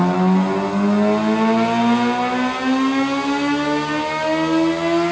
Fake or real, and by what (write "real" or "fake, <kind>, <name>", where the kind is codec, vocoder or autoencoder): real